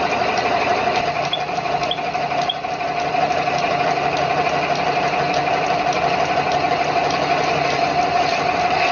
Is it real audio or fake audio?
real